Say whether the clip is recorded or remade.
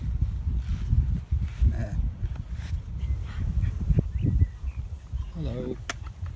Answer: recorded